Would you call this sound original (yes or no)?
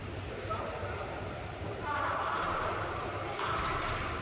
no